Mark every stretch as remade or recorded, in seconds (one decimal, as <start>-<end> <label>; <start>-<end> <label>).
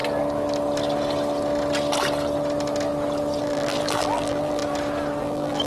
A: 0.0-3.4 recorded; 3.4-4.6 remade; 4.6-5.2 recorded; 5.2-5.7 remade